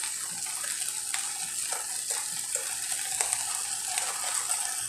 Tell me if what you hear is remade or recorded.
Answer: recorded